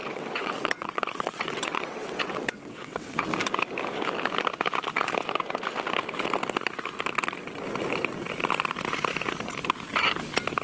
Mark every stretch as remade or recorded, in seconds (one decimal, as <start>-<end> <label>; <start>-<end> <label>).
0.0-3.2 remade; 3.2-10.6 recorded